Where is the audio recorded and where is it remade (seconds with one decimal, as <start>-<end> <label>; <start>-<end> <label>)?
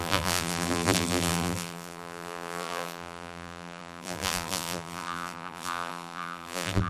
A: 0.0-6.9 remade